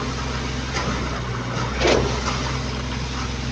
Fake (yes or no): no